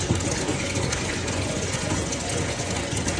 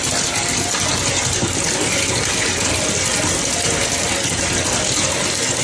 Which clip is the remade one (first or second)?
first